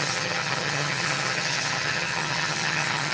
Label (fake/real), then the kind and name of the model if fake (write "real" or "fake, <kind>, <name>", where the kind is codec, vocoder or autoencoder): fake, vocoder, HiFi-GAN